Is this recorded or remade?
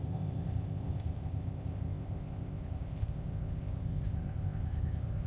remade